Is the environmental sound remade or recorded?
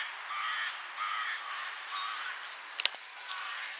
recorded